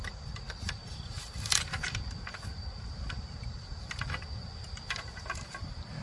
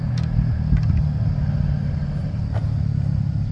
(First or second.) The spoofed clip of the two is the first